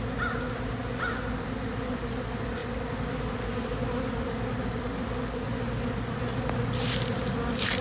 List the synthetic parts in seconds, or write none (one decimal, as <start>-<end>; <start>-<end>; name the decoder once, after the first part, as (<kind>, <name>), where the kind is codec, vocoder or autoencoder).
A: none